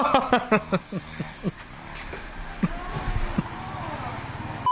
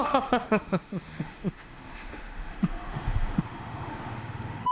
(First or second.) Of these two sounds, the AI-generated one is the second